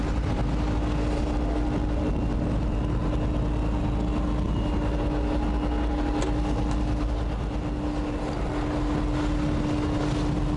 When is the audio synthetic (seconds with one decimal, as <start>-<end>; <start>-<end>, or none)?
none